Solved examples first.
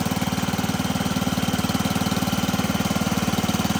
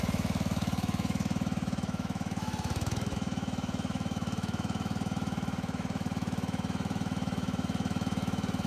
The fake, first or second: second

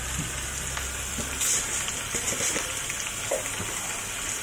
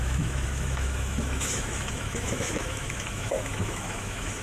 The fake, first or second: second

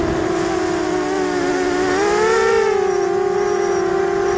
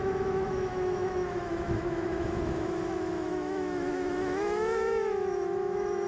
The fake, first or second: second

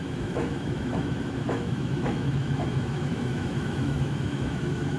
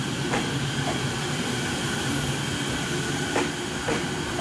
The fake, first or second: first